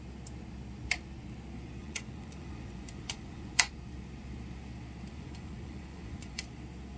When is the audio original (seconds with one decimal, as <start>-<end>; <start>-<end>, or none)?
0.0-1.8; 3.7-5.1; 6.4-7.0